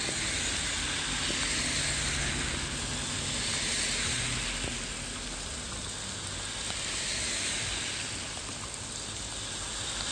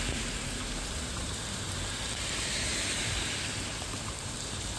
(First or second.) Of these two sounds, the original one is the first